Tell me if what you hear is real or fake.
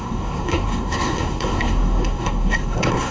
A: fake